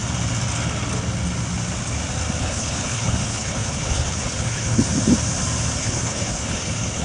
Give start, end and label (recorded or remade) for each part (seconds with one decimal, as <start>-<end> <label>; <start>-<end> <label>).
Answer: 0.0-2.4 recorded; 2.4-4.9 remade; 4.9-5.8 recorded; 5.8-7.0 remade